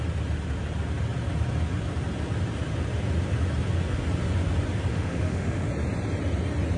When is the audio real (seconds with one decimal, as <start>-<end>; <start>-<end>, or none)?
0.0-4.9; 5.7-6.8